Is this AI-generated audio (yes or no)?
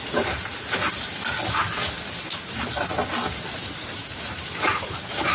no